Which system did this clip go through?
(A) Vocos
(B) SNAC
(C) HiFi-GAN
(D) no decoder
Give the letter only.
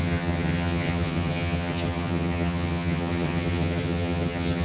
C